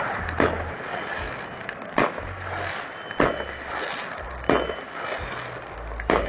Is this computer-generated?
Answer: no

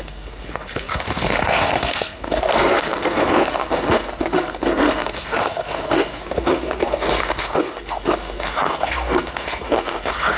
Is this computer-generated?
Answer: yes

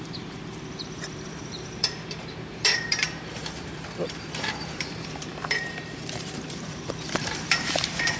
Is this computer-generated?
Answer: yes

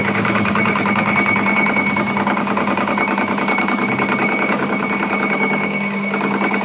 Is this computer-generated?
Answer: yes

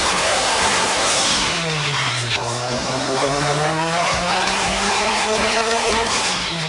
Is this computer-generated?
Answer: yes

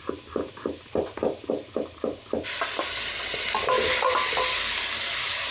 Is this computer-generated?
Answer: no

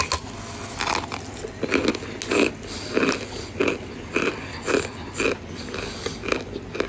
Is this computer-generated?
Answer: no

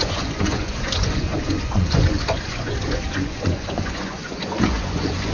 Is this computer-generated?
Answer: yes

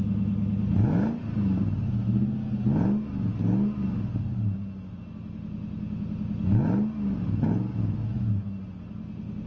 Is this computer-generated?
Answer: no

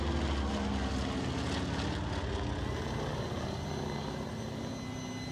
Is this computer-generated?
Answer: no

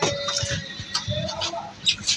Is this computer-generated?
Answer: no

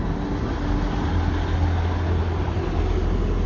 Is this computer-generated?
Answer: no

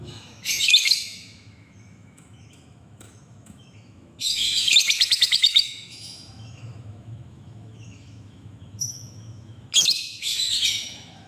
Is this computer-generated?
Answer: yes